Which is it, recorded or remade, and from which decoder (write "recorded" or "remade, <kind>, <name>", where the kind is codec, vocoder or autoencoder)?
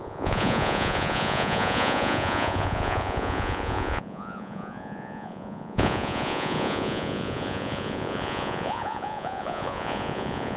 remade, vocoder, Vocos